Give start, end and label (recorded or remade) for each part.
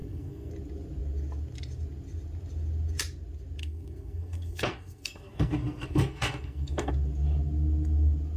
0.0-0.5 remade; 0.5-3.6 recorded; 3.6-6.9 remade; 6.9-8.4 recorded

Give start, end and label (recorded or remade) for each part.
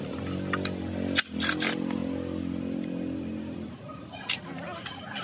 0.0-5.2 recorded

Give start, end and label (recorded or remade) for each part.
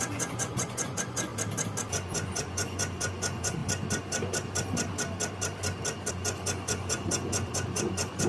0.0-1.3 remade; 1.3-1.9 recorded; 1.9-3.6 remade; 3.6-6.1 recorded; 6.1-8.3 remade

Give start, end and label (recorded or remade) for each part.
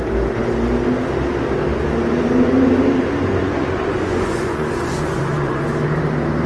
0.0-3.4 recorded; 3.4-5.6 remade; 5.6-6.5 recorded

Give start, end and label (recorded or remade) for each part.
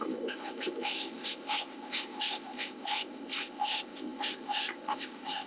0.0-5.5 remade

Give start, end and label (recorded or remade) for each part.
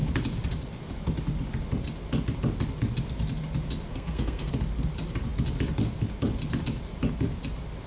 0.0-3.9 recorded; 3.9-4.5 remade; 4.5-7.9 recorded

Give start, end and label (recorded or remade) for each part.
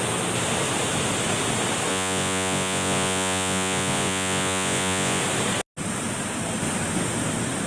0.0-1.9 recorded; 1.9-5.2 remade; 5.2-7.7 recorded